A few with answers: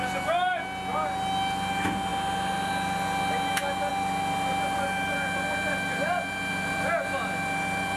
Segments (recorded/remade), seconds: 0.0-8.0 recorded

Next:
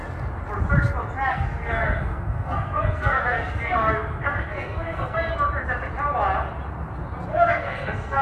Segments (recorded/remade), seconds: 0.0-1.3 recorded; 1.3-5.3 remade; 5.3-7.3 recorded; 7.3-8.2 remade

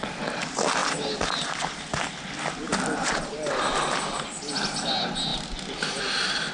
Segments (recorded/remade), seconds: 0.0-6.5 recorded

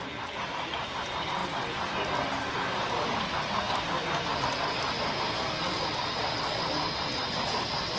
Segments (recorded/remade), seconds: 0.0-5.1 recorded; 5.1-5.6 remade; 5.6-8.0 recorded

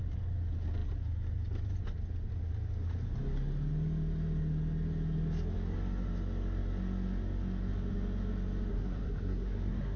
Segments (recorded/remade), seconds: 0.0-8.7 recorded; 8.7-10.0 remade

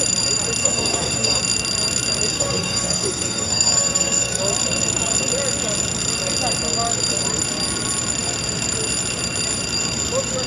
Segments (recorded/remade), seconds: 0.0-0.6 recorded; 0.6-1.4 remade; 1.4-2.3 recorded; 2.3-4.4 remade; 4.4-10.5 recorded

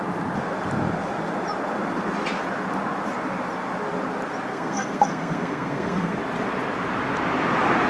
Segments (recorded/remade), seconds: 0.0-4.5 recorded; 4.5-6.2 remade; 6.2-7.9 recorded